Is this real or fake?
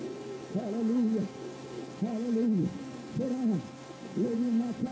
fake